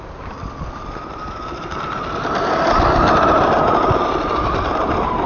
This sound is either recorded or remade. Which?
recorded